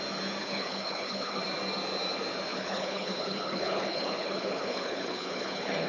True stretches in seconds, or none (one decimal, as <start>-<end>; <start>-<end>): 0.0-0.4; 1.4-2.5